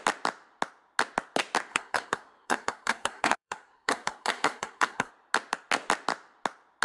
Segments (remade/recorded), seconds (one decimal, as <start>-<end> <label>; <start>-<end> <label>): 0.0-1.7 recorded; 1.7-5.1 remade; 5.1-6.8 recorded